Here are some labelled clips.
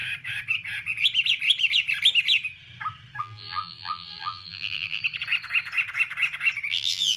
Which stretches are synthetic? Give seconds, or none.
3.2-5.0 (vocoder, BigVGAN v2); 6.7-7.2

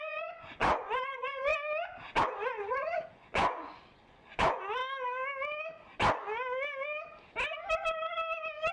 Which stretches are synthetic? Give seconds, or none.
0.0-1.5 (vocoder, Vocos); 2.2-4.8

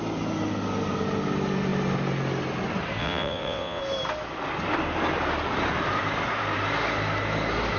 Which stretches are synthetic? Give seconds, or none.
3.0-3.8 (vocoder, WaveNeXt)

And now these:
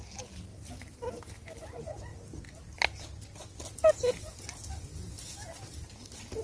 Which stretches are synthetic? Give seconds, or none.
none

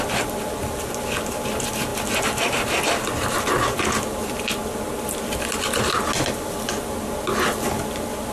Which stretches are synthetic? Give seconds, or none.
none

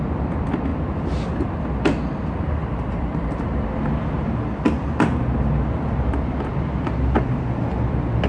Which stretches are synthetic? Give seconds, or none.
2.6-3.8 (vocoder, BigVGAN v2)

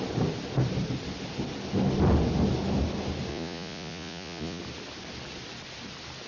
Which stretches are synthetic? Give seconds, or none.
3.3-4.6 (vocoder, Vocos)